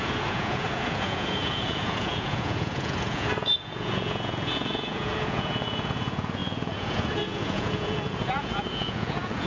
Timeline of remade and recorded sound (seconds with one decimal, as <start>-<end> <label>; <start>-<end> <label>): 0.0-9.5 remade